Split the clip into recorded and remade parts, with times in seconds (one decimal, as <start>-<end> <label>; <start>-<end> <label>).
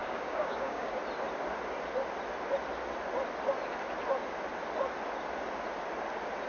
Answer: 0.0-1.0 remade; 1.0-6.5 recorded